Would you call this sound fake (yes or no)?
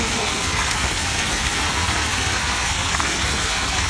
yes